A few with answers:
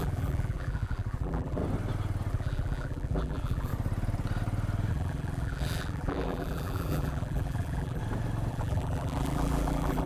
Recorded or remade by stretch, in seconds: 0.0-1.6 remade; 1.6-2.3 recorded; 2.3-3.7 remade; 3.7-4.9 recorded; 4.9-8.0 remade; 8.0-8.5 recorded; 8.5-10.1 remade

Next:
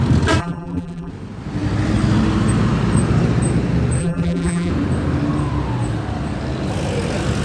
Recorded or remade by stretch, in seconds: 0.0-0.4 recorded; 0.4-1.1 remade; 1.1-4.0 recorded; 4.0-4.7 remade; 4.7-7.4 recorded

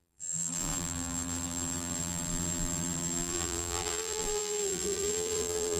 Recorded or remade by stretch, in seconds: 0.0-5.8 remade